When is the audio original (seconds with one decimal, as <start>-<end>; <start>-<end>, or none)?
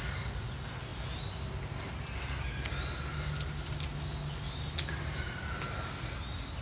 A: 0.0-6.6